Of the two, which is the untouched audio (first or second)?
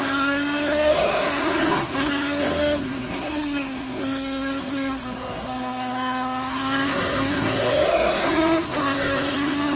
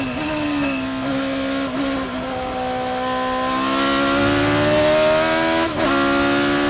second